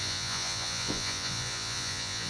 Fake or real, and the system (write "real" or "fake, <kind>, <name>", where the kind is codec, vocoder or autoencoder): fake, vocoder, Vocos